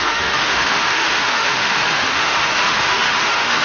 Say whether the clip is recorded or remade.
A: remade